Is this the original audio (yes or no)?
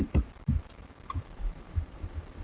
no